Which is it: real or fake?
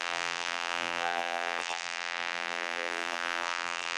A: fake